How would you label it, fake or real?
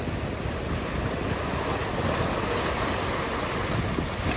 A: real